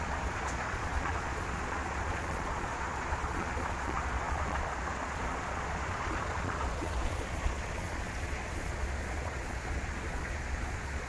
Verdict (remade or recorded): remade